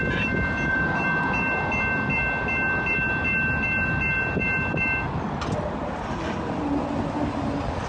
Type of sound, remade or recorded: recorded